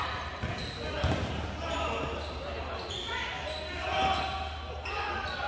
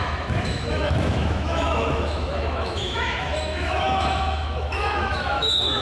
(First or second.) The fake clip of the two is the second